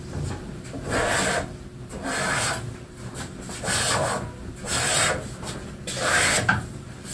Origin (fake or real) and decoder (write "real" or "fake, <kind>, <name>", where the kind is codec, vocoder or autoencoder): real